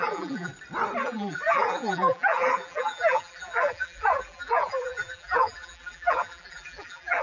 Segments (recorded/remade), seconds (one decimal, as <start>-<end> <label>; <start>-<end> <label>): 0.0-0.5 remade; 0.5-1.0 recorded; 1.0-7.2 remade